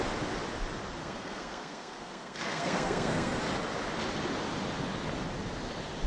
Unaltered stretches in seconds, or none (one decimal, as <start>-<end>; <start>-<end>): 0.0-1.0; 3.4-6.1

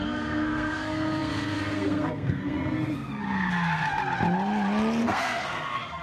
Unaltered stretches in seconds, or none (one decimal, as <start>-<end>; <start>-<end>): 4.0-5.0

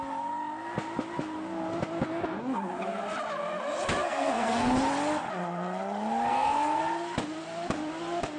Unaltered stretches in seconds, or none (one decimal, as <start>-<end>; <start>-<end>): 0.0-4.0; 4.7-6.3; 6.8-8.4

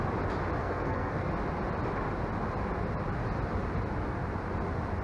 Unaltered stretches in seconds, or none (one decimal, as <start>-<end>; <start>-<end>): 0.0-0.6; 1.3-5.0